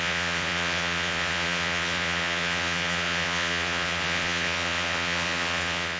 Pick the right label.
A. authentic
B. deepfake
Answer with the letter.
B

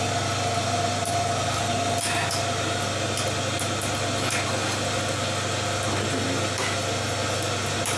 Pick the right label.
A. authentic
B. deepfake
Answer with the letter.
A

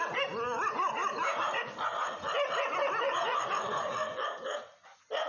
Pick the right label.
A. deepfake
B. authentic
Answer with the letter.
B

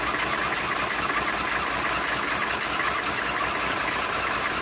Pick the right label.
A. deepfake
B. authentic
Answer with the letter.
B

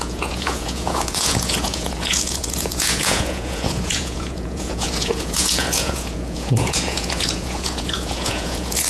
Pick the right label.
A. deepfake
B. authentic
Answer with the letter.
A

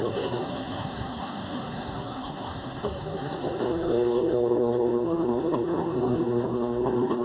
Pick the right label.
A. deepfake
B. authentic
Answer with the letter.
A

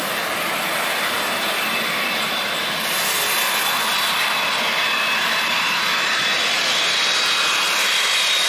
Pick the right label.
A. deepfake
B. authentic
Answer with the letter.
B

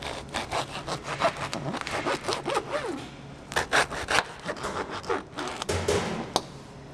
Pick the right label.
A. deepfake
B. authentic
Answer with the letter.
B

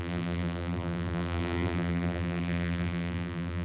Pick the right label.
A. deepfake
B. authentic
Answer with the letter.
A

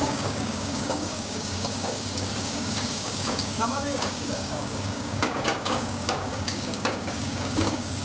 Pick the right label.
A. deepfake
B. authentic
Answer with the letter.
A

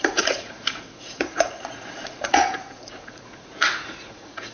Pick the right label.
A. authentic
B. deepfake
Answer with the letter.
B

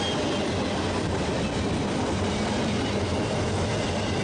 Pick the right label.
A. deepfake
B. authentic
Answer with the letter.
B